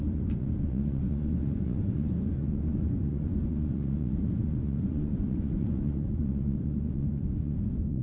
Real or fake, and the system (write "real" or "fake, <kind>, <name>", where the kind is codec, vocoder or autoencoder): fake, vocoder, Vocos